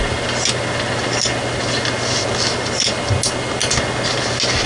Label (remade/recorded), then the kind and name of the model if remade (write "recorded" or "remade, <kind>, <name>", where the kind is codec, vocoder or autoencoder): recorded